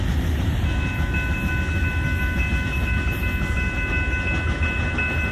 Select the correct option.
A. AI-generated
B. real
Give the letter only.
B